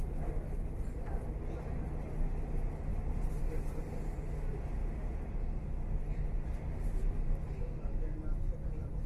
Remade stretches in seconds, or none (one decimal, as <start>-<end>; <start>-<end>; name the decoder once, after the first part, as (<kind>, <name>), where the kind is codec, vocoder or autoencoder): none